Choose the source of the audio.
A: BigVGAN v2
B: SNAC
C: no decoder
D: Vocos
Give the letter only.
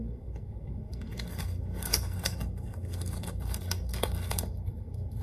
B